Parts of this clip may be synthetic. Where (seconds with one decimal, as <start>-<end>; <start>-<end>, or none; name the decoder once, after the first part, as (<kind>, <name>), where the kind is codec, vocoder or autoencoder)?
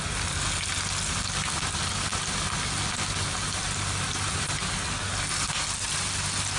none